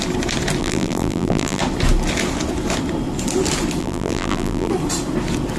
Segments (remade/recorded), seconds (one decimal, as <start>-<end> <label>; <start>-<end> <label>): 0.0-0.6 recorded; 0.6-1.6 remade; 1.6-3.8 recorded; 3.8-4.7 remade; 4.7-5.6 recorded